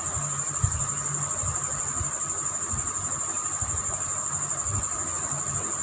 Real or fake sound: real